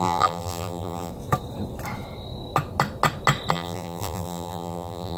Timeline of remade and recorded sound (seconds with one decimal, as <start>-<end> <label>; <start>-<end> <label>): 0.0-1.1 remade; 1.1-3.5 recorded; 3.5-5.2 remade